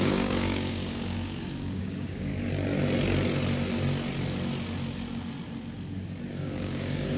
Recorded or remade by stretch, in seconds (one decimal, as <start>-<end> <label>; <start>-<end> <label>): 0.0-2.3 remade; 2.3-6.3 recorded; 6.3-7.2 remade